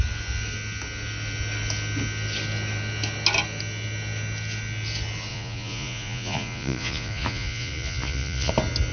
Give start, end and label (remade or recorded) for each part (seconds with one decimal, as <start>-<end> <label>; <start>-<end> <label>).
0.0-5.3 recorded; 5.3-8.5 remade; 8.5-8.9 recorded